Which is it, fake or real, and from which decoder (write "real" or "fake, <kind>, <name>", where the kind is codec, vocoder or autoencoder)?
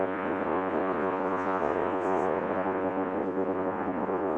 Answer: fake, vocoder, Vocos